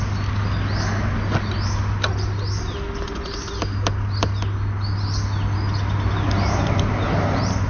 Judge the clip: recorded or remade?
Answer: recorded